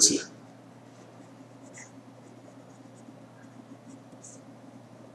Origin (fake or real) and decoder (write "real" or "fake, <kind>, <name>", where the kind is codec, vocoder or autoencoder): real